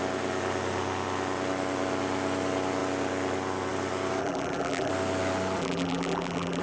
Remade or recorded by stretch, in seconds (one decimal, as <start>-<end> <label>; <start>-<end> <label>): 0.0-4.2 recorded; 4.2-4.9 remade; 4.9-5.6 recorded; 5.6-6.6 remade